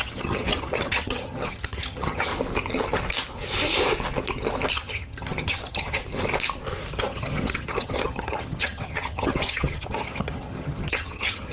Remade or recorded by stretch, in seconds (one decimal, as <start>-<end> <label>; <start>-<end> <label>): 0.0-2.3 remade; 2.3-4.7 recorded; 4.7-6.0 remade; 6.0-6.9 recorded; 6.9-11.5 remade